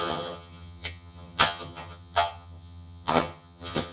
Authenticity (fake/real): fake